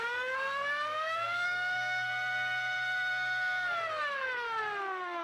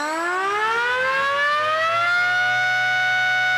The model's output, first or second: first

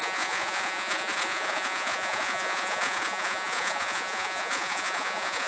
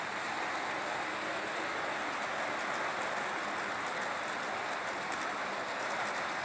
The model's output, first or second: first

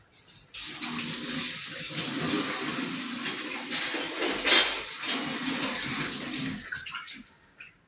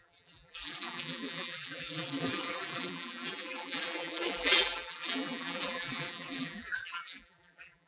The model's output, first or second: second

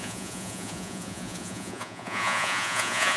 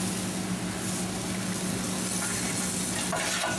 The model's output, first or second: first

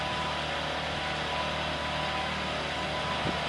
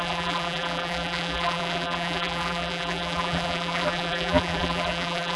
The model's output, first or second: second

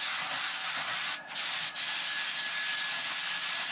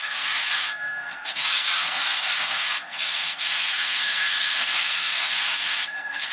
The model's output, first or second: second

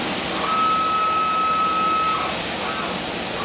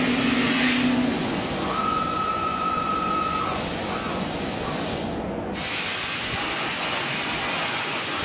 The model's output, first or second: second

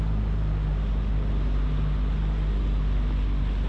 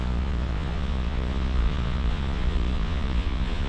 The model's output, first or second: second